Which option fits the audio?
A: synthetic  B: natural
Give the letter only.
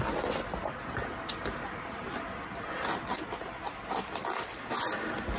B